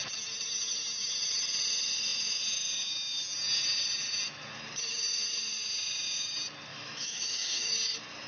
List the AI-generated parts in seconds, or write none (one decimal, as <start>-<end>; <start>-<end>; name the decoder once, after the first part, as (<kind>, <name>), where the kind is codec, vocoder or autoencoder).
6.7-7.7 (autoencoder, DAC-VAE)